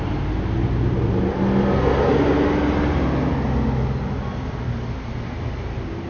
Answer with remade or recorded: recorded